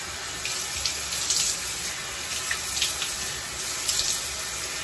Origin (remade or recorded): recorded